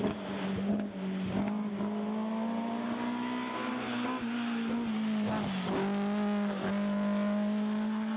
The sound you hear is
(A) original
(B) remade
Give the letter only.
A